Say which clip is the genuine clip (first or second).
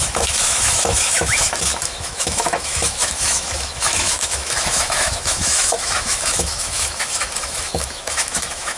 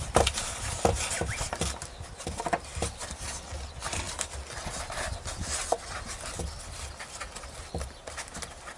second